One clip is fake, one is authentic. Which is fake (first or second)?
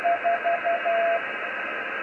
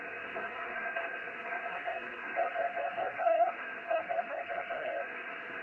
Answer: second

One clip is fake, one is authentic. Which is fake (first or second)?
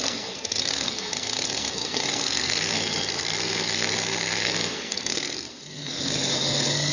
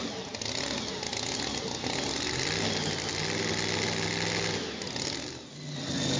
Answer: first